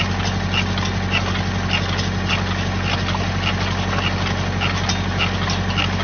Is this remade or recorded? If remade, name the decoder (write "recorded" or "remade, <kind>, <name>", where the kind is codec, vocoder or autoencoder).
recorded